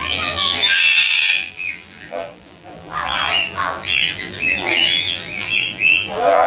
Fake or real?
fake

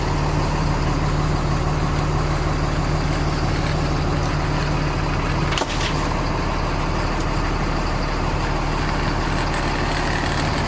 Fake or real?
real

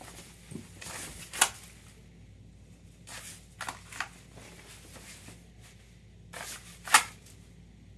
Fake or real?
real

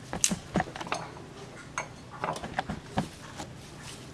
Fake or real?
real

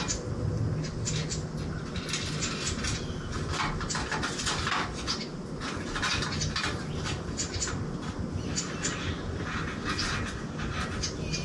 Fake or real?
real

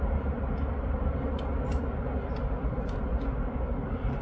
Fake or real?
real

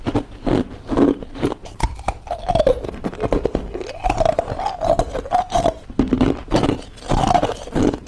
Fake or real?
real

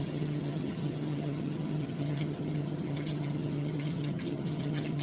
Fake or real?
fake